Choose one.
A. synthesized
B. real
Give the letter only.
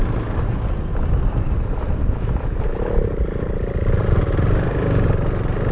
B